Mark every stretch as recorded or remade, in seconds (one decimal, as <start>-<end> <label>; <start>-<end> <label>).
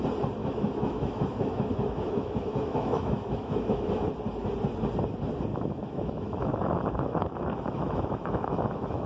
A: 0.0-0.4 recorded; 0.4-4.1 remade; 4.1-5.5 recorded; 5.5-9.1 remade